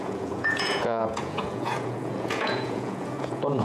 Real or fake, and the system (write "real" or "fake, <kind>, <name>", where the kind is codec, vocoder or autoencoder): fake, vocoder, Vocos